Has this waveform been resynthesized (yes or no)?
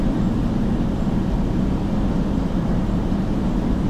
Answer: no